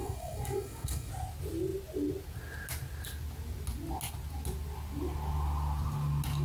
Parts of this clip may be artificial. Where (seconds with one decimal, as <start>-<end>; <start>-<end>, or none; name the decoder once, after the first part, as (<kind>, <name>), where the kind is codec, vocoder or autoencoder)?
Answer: 0.0-1.1 (codec, DAC)